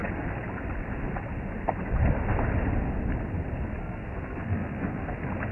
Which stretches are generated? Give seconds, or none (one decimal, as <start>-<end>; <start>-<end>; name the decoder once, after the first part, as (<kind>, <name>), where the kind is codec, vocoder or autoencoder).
3.8-5.1 (codec, SNAC)